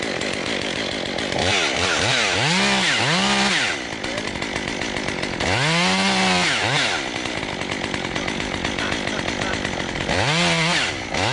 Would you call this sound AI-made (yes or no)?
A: no